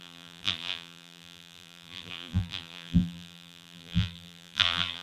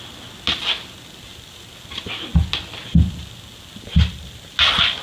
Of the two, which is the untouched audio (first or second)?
second